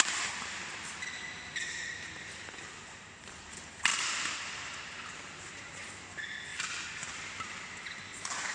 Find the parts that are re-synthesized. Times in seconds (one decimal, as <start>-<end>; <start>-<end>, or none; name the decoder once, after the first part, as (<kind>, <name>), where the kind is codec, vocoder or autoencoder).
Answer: none